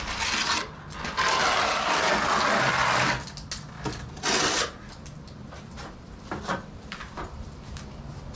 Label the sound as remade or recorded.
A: recorded